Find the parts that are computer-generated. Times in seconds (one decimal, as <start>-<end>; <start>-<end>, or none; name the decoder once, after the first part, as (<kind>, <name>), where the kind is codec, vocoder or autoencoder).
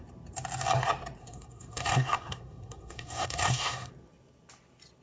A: 1.2-3.9 (codec, SNAC)